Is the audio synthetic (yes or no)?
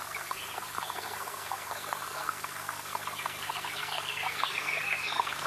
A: yes